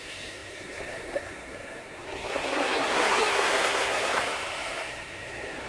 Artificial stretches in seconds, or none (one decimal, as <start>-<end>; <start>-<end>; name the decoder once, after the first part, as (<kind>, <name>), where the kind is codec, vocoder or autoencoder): 0.0-5.7 (codec, SNAC)